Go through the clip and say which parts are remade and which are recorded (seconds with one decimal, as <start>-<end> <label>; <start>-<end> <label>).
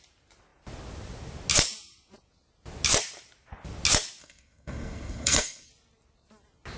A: 0.0-4.2 recorded; 4.2-5.7 remade; 5.7-6.8 recorded